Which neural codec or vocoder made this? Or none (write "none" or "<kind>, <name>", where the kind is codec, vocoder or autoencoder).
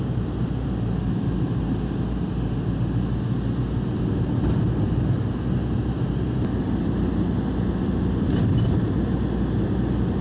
none